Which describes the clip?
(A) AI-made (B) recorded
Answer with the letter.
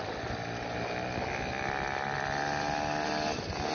B